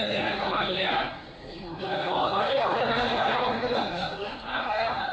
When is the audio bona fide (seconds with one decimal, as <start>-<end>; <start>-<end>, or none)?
none